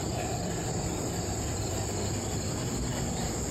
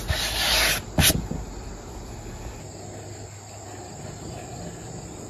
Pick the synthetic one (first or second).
first